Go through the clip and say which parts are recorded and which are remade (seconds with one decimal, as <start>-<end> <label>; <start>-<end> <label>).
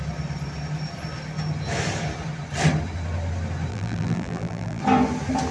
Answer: 0.0-3.7 recorded; 3.7-4.8 remade; 4.8-5.5 recorded